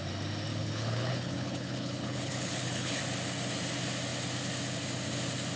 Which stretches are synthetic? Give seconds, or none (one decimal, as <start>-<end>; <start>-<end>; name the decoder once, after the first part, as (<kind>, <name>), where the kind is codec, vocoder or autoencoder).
0.5-3.0 (codec, HILCodec)